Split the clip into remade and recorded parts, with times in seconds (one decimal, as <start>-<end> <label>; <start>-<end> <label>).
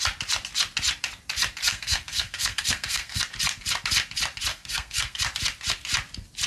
0.0-1.7 recorded; 1.7-3.2 remade; 3.2-4.5 recorded; 4.5-5.2 remade; 5.2-6.5 recorded